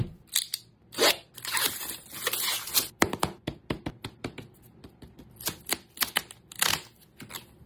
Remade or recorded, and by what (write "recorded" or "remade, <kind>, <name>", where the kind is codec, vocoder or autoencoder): recorded